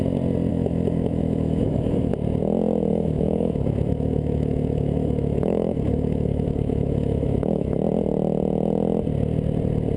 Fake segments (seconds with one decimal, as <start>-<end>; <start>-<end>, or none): 0.5-2.1; 2.9-7.8

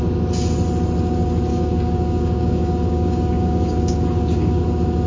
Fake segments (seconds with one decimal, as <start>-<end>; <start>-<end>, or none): 1.5-4.6

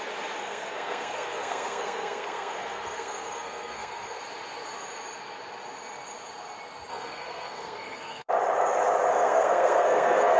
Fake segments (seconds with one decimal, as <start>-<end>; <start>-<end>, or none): 0.4-4.2; 6.9-8.3; 9.1-10.4

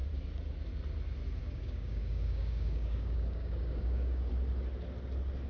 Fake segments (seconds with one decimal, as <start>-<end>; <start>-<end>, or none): 1.4-4.3

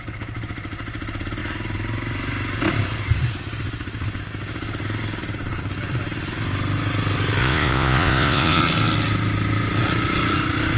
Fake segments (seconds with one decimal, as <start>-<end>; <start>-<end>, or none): 7.4-8.6

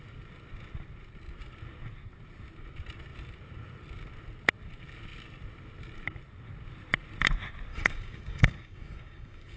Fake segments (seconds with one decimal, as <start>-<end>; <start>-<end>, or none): 7.7-9.6